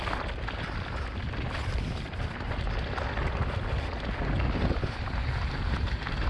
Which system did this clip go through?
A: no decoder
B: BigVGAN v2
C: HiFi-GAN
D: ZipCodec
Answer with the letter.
A